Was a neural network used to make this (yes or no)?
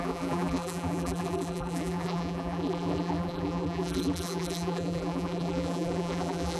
yes